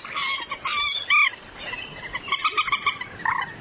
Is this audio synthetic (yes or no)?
no